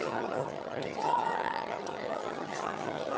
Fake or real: fake